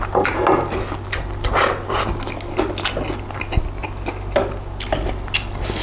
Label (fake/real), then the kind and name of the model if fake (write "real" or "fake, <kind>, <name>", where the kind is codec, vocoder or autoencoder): real